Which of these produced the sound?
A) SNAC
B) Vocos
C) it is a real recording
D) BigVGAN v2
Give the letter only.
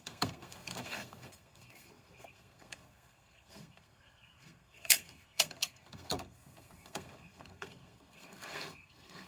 A